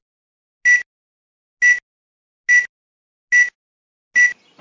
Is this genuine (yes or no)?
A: yes